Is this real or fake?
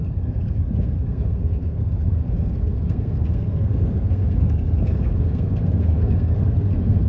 fake